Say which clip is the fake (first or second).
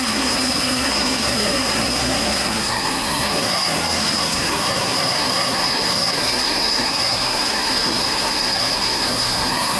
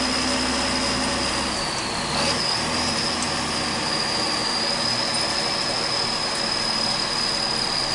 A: first